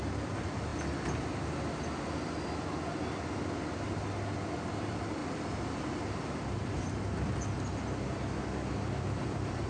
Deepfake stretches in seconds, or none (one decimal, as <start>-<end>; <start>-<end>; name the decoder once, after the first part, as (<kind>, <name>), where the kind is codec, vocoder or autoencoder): 0.0-0.7 (vocoder, BigVGAN v2); 4.7-5.2; 8.7-9.7

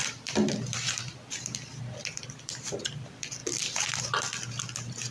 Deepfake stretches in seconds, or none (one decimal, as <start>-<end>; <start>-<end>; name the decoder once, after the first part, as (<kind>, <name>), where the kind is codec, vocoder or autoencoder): 0.0-5.1 (vocoder, BigVGAN v2)

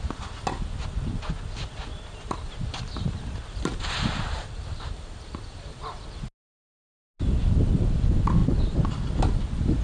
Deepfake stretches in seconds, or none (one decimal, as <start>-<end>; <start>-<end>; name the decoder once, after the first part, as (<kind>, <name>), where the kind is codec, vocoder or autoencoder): 1.9-6.1 (vocoder, BigVGAN v2)